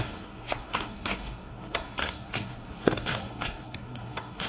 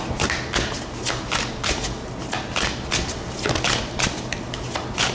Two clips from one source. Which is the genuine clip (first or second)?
second